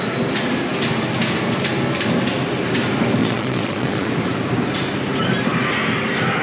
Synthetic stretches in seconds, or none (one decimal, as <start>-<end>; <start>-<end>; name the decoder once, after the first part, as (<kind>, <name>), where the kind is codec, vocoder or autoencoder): 3.2-4.1 (vocoder, Vocos)